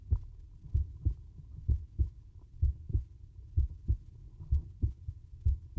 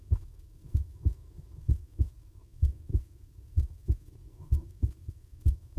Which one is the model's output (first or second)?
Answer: second